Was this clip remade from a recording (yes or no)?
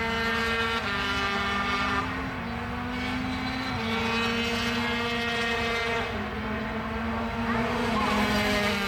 no